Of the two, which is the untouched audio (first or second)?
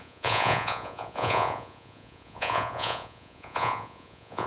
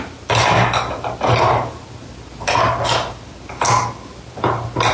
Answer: second